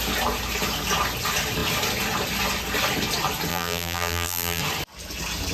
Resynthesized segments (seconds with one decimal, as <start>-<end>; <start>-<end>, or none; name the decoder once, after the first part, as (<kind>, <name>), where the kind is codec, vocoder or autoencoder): 3.5-4.6 (vocoder, BigVGAN v2)